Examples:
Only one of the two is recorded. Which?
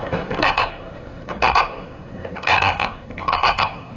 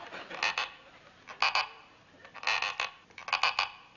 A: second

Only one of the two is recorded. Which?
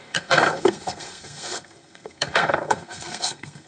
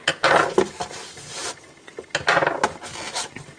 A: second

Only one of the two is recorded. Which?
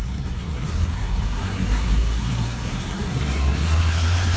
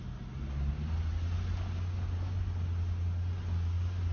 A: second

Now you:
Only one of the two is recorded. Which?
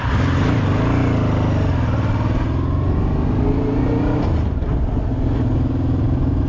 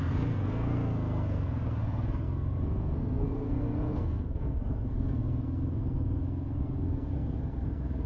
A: first